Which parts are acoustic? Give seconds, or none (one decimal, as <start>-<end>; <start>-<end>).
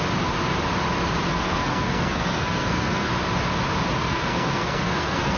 0.0-1.3; 3.1-4.0